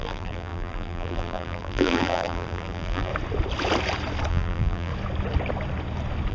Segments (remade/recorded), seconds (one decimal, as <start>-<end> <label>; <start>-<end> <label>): 0.0-3.1 remade; 3.1-4.3 recorded; 4.3-4.9 remade; 4.9-6.3 recorded

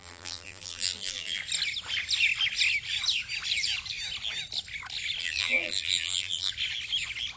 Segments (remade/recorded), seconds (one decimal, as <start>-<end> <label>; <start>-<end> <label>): 0.0-1.4 remade; 1.4-5.2 recorded; 5.2-6.5 remade; 6.5-7.4 recorded